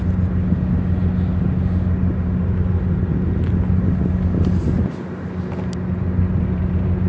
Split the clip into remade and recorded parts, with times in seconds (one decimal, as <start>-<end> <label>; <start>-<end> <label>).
0.0-7.1 recorded